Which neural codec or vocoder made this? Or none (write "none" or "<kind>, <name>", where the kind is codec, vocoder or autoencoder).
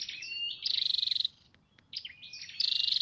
none